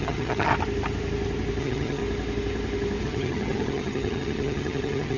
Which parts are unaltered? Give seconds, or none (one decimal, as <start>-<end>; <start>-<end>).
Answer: 0.5-1.6; 2.0-3.0

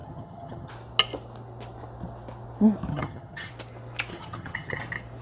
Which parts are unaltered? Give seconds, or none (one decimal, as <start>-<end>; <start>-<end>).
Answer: 0.7-2.9; 3.5-4.1; 4.8-5.2

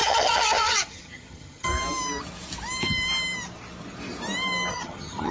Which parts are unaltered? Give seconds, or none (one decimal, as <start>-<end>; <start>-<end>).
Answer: 1.7-4.7

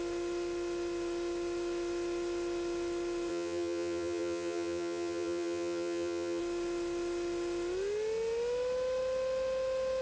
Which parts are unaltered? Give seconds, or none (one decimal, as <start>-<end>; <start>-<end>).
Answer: 0.0-3.3; 6.4-10.0

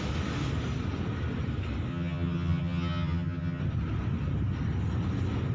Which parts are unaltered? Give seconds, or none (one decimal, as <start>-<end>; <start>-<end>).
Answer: 0.0-1.9; 3.6-5.5

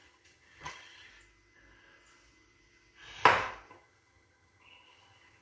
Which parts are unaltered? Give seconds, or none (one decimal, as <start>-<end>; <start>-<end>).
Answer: 1.1-3.7